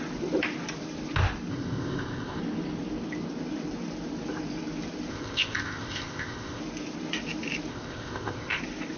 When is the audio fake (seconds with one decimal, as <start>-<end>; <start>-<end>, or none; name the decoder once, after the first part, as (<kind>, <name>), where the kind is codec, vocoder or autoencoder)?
1.5-2.4 (codec, ZipCodec); 5.1-6.6; 7.7-8.6